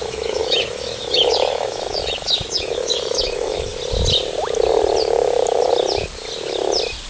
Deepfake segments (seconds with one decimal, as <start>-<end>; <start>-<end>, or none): 0.0-3.7